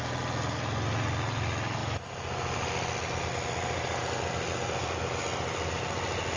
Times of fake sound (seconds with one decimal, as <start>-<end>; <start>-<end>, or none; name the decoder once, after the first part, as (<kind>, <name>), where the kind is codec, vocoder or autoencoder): none